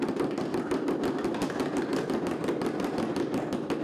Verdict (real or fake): real